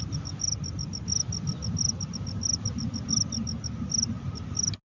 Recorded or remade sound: recorded